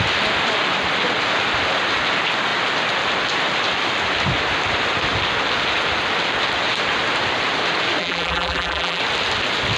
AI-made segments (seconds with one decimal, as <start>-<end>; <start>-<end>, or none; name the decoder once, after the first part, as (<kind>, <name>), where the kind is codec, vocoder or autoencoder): 8.0-9.0 (vocoder, BigVGAN v2)